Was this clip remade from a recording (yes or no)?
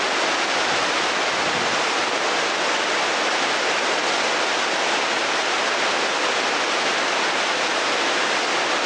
no